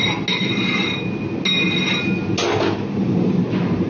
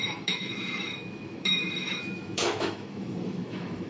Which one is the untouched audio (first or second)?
first